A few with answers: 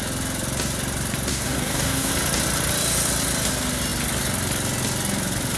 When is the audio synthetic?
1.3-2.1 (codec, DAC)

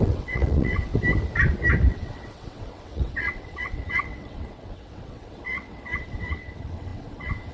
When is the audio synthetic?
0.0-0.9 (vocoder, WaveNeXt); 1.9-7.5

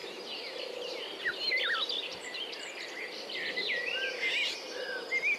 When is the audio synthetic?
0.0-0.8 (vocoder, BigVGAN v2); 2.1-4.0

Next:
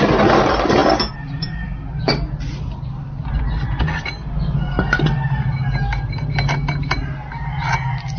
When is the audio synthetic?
none

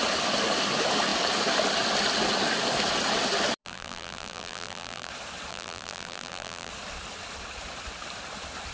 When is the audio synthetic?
3.6-5.1 (vocoder, BigVGAN v2); 5.5-6.7

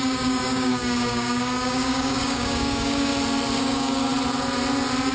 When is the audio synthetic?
0.0-3.1 (codec, DAC); 3.6-4.1

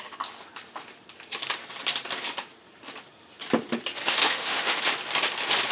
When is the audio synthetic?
3.9-4.8 (autoencoder, DAC-VAE)

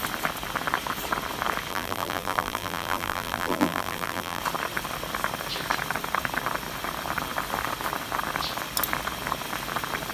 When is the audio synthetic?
1.7-4.4 (vocoder, BigVGAN v2)